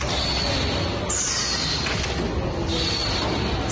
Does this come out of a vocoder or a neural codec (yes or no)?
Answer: no